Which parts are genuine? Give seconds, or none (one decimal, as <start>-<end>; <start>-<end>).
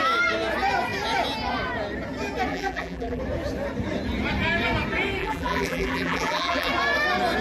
0.0-2.5; 3.2-5.2; 6.7-7.4